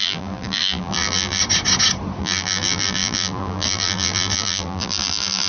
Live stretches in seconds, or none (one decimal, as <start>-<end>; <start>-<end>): 1.4-2.2